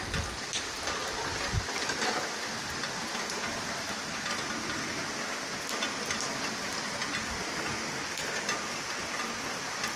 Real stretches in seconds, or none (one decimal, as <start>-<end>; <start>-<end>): 0.0-10.0